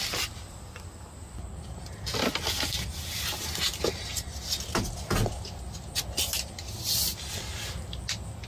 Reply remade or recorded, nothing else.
recorded